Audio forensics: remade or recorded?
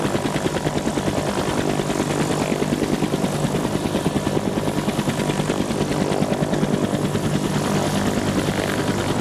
recorded